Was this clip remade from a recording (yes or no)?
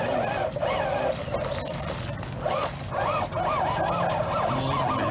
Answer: no